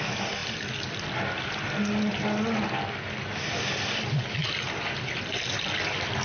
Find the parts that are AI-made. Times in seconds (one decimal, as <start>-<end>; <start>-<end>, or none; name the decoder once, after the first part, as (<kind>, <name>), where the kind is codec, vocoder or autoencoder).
none

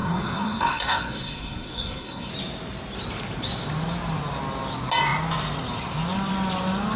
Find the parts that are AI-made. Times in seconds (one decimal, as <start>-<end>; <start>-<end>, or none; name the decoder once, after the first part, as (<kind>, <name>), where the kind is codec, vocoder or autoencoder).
0.0-2.3 (codec, SNAC)

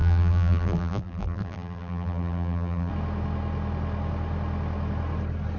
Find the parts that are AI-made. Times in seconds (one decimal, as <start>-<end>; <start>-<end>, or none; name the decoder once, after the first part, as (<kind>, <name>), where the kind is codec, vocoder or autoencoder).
0.0-2.9 (vocoder, BigVGAN v2)